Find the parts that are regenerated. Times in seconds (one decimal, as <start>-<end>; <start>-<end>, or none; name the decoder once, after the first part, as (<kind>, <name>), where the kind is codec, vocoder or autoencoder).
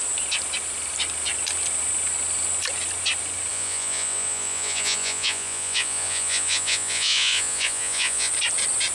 3.5-8.3 (vocoder, Vocos)